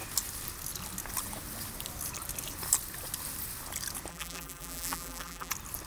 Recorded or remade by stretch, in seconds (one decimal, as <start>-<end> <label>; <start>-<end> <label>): 0.0-4.1 recorded; 4.1-5.5 remade; 5.5-5.9 recorded